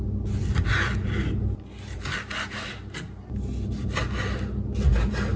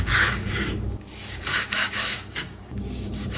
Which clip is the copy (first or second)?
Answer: second